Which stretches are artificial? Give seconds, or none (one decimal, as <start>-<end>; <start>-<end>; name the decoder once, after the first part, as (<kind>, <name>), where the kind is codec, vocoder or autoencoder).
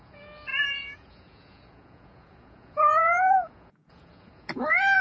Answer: 0.0-5.0 (vocoder, Vocos)